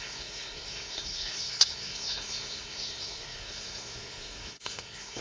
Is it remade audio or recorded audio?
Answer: remade